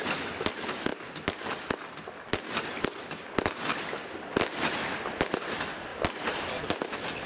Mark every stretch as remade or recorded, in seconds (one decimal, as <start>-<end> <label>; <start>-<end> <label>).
0.0-7.3 recorded